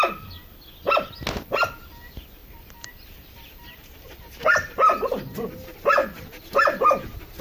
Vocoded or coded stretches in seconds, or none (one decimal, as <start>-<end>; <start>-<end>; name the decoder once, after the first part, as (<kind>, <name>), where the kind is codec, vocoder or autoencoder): 2.4-6.8 (vocoder, BigVGAN v2)